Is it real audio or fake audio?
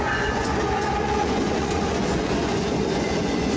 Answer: fake